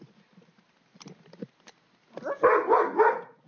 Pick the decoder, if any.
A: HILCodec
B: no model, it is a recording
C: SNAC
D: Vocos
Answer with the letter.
B